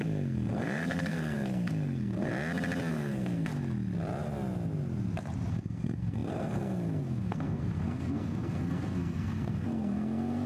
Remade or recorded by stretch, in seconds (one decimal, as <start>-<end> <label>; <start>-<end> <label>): 0.0-2.3 remade; 2.3-2.9 recorded; 2.9-3.5 remade; 3.5-5.5 recorded; 5.5-10.5 remade

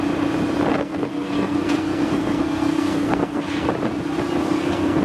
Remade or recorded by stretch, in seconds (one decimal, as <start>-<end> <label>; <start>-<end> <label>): 0.0-0.7 recorded; 0.7-3.7 remade; 3.7-4.4 recorded; 4.4-5.0 remade

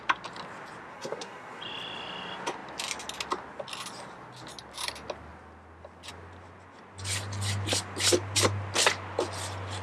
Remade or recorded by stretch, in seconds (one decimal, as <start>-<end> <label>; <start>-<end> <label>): 0.0-0.9 recorded; 0.9-1.6 remade; 1.6-9.8 recorded

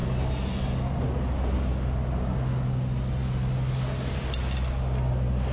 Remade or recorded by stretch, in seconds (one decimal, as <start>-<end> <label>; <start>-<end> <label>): 0.0-5.5 recorded